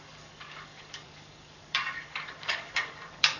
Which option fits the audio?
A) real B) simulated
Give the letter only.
B